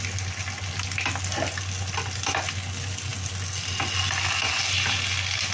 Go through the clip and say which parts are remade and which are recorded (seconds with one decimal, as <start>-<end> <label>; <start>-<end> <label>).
0.0-5.5 recorded